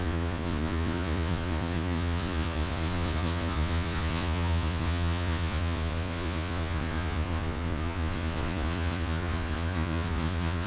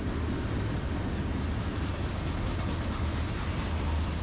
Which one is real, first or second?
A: second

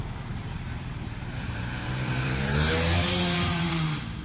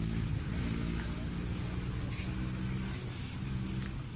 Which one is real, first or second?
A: second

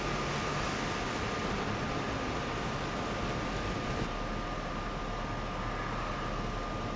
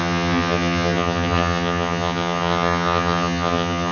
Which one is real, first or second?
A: first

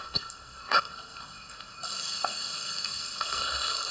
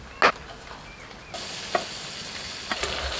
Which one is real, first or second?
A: second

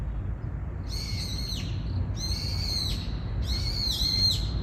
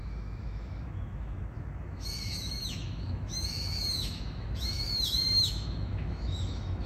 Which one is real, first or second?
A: first